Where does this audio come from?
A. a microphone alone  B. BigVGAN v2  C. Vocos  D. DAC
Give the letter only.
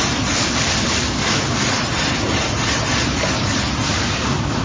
A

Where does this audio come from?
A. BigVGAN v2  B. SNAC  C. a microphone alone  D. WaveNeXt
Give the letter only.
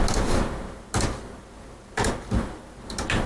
C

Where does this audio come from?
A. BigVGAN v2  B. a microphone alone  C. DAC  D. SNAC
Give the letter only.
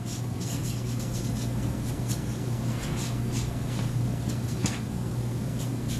D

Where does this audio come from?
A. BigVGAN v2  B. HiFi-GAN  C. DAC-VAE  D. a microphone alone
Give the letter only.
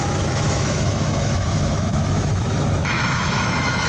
C